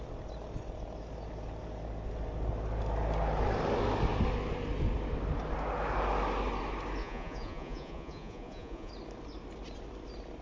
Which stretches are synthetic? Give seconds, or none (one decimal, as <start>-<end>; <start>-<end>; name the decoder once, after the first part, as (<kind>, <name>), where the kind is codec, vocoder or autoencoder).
7.0-8.9 (vocoder, Vocos)